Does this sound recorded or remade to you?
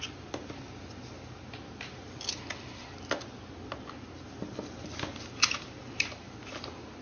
recorded